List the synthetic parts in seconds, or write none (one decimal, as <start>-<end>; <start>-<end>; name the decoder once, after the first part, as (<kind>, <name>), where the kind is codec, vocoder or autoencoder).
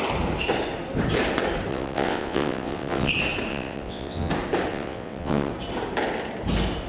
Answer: 1.7-3.1 (vocoder, WaveNeXt); 3.5-4.3; 4.7-5.5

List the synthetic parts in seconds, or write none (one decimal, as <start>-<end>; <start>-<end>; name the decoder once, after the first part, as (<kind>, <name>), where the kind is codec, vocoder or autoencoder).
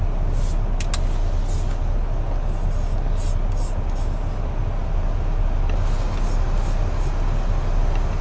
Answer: none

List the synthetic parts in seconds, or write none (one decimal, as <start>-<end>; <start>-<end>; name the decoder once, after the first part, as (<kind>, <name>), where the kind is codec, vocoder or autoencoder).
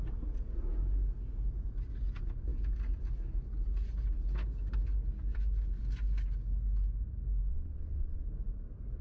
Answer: 7.5-8.2 (vocoder, WaveNeXt)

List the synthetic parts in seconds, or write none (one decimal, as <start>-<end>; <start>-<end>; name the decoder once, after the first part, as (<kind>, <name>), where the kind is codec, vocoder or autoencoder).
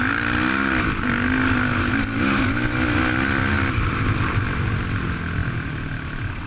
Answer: none